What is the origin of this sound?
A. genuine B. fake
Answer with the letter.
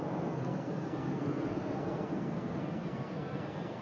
B